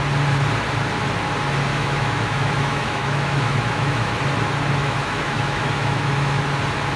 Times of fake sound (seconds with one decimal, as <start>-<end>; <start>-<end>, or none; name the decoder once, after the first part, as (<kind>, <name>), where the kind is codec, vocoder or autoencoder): 1.7-4.1 (autoencoder, DAC-VAE); 4.8-6.4